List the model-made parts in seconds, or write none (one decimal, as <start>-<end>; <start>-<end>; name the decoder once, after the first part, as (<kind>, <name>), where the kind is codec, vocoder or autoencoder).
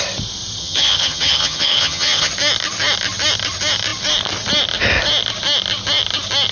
0.6-2.3 (vocoder, HiFi-GAN)